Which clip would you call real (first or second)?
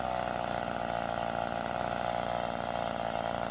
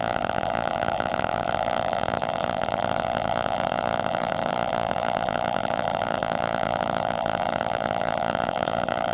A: first